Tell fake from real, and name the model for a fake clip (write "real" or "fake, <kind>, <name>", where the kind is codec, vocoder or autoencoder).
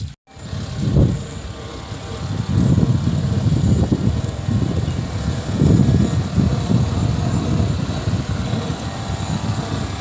real